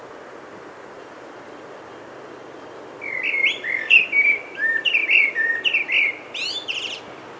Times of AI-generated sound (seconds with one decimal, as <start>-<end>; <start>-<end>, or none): 0.0-5.0; 7.0-7.4